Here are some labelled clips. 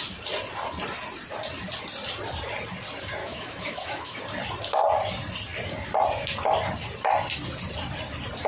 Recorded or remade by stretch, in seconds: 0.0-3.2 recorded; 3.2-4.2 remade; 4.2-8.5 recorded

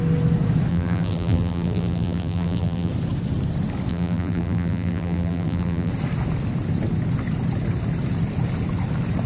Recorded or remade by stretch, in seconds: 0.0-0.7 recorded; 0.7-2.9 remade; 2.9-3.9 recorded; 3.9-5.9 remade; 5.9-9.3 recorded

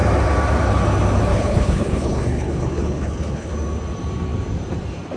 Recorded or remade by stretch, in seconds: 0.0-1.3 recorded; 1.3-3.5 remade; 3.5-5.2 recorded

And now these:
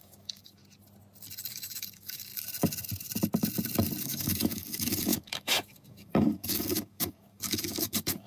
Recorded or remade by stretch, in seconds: 0.0-0.6 remade; 0.6-1.5 recorded; 1.5-2.3 remade; 2.3-4.0 recorded; 4.0-8.3 remade

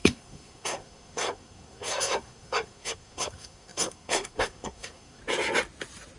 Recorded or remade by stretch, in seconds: 0.0-5.2 remade; 5.2-6.2 recorded